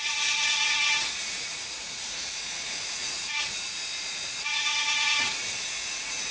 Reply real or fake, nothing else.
fake